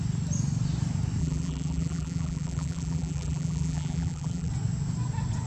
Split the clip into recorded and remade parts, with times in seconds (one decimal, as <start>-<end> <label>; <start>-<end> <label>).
0.0-1.2 recorded; 1.2-4.5 remade; 4.5-5.5 recorded